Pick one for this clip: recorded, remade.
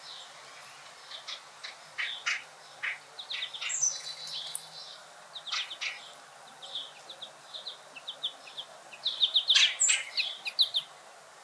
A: recorded